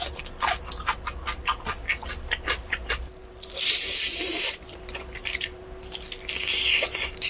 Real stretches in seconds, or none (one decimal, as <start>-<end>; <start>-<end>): 0.0-3.2; 5.6-7.3

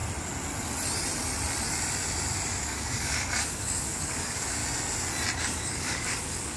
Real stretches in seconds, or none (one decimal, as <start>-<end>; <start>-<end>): 0.0-2.6; 4.6-5.4

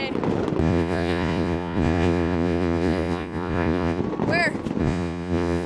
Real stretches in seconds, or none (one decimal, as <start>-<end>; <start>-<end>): 0.0-0.6; 4.0-4.8

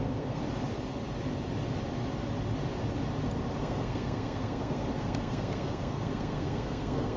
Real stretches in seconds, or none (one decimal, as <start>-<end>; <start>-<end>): 0.4-3.6